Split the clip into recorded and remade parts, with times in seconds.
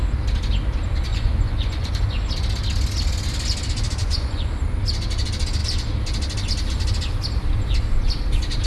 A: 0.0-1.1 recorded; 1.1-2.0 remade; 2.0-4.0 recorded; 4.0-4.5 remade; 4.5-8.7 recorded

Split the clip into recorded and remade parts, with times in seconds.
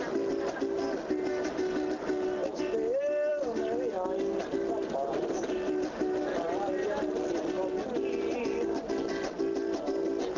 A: 0.0-10.4 recorded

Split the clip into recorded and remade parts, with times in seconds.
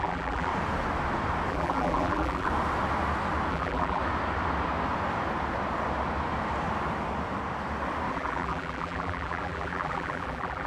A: 0.0-0.5 remade; 0.5-1.5 recorded; 1.5-2.5 remade; 2.5-3.5 recorded; 3.5-4.0 remade; 4.0-8.1 recorded; 8.1-10.7 remade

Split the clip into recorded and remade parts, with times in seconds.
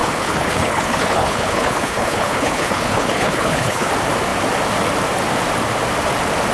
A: 0.0-3.9 remade; 3.9-6.5 recorded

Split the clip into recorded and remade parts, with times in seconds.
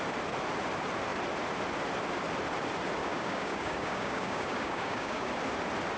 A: 0.0-3.0 recorded; 3.0-5.3 remade; 5.3-6.0 recorded